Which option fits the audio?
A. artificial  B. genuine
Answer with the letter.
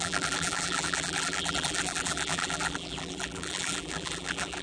A